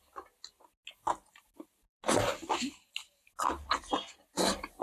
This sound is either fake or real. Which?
real